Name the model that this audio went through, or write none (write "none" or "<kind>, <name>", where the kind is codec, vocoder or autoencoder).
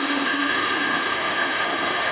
autoencoder, DAC-VAE